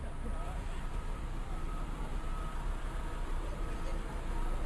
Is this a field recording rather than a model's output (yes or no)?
no